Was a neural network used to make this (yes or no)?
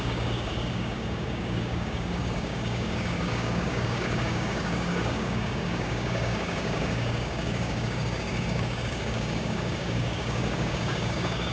yes